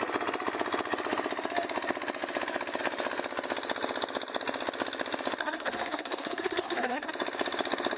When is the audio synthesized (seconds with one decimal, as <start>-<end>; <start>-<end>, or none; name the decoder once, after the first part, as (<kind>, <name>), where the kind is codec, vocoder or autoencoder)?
5.4-7.1 (codec, SNAC)